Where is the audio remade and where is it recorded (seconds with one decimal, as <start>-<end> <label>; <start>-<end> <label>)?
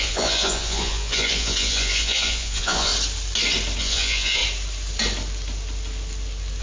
0.0-2.9 remade; 2.9-3.8 recorded; 3.8-4.4 remade; 4.4-6.6 recorded